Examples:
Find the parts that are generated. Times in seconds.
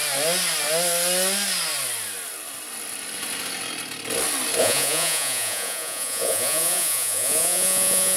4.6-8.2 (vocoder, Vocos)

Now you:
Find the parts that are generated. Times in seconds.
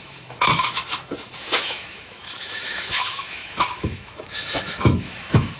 0.0-5.6 (autoencoder, DAC-VAE)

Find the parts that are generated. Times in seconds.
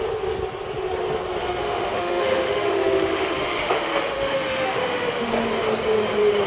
1.4-5.3 (autoencoder, DAC-VAE)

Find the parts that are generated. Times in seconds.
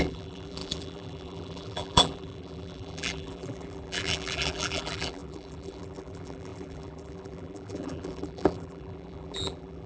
0.0-9.9 (vocoder, BigVGAN v2)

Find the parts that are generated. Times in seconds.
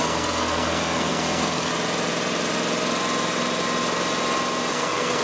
0.0-1.7 (codec, SNAC); 4.7-5.2